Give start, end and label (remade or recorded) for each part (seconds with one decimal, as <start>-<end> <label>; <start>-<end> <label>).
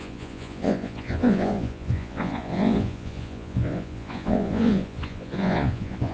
0.0-6.1 remade